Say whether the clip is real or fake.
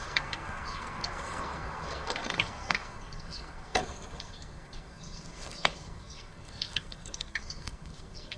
fake